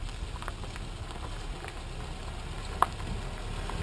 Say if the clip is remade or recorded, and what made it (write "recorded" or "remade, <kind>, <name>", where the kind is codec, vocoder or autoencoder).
recorded